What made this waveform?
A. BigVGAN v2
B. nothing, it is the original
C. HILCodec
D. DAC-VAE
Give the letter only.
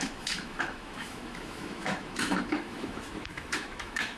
D